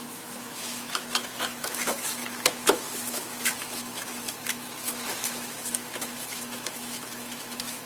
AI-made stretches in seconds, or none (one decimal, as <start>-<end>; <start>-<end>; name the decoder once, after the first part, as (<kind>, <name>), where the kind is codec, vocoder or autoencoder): 0.0-7.9 (autoencoder, DAC-VAE)